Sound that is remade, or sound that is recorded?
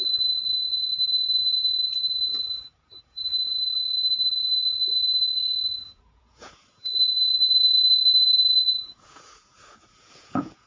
remade